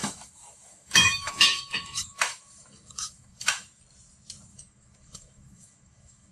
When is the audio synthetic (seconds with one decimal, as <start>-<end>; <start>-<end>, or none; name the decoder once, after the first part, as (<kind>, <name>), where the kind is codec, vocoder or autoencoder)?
0.0-3.8 (autoencoder, DAC-VAE); 4.5-6.3